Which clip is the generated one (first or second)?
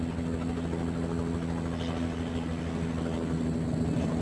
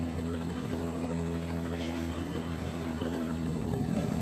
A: second